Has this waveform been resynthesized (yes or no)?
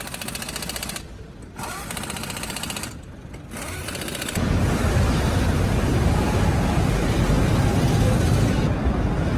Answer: no